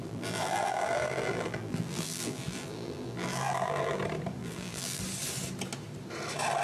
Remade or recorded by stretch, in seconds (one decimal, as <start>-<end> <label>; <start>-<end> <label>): 0.0-4.0 remade; 4.0-4.4 recorded; 4.4-5.0 remade; 5.0-6.6 recorded